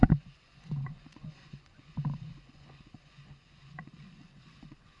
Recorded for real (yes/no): no